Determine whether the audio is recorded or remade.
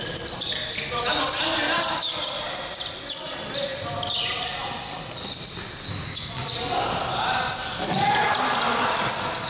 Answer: recorded